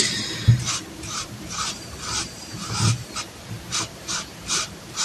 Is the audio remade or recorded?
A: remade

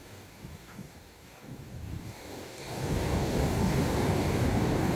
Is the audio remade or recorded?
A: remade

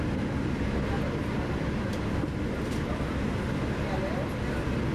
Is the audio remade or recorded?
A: recorded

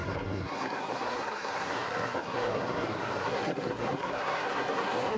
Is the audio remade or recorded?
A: remade